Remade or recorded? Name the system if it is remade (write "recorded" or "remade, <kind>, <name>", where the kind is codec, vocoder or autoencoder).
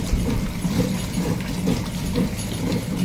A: remade, vocoder, BigVGAN v2